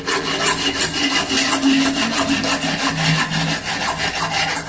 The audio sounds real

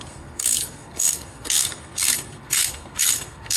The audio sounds fake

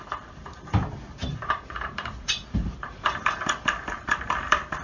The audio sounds fake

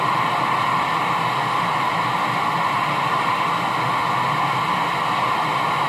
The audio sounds real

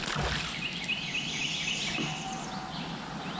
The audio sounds real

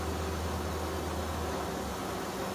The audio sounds real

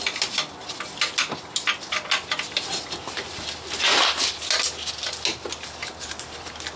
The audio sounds real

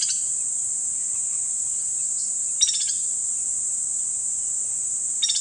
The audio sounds real